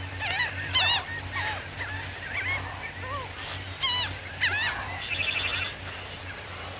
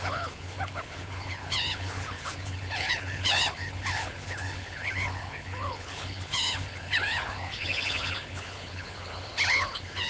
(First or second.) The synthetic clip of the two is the second